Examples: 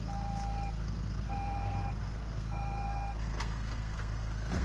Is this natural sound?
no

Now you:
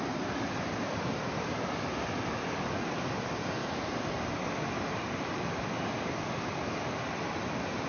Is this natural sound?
no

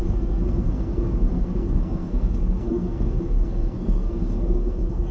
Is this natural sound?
no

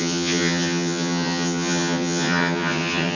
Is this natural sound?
no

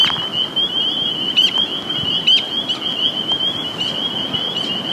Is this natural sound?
yes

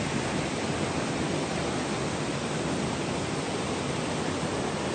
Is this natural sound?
yes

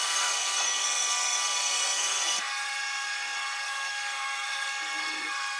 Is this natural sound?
no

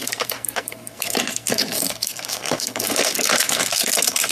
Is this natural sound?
no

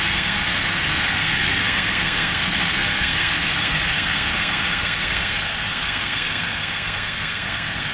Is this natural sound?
no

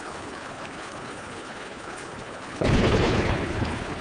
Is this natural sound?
no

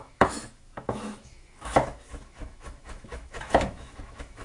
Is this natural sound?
no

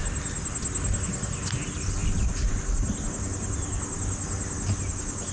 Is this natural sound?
yes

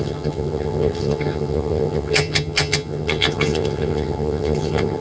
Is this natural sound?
no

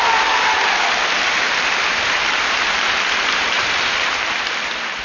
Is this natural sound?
no